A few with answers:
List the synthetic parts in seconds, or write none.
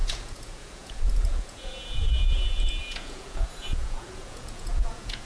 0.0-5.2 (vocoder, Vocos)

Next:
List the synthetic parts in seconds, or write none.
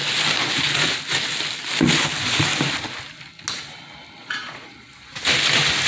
4.2-4.9 (vocoder, Vocos)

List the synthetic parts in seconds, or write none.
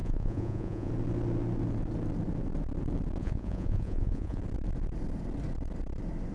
0.0-0.9 (vocoder, Vocos); 3.2-4.4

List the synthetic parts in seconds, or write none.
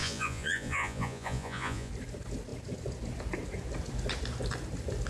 0.0-1.9 (vocoder, Vocos)